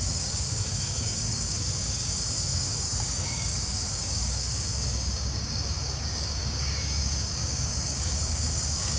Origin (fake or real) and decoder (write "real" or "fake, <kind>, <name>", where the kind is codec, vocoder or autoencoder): fake, codec, DAC